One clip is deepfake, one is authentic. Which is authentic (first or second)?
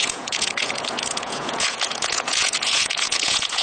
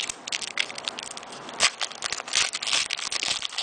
second